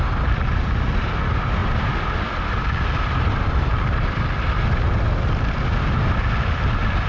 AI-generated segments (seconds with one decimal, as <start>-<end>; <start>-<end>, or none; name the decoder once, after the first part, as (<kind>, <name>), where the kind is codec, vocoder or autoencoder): none